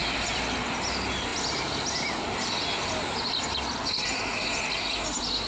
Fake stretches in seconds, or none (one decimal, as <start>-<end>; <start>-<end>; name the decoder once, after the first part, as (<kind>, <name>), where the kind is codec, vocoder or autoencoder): none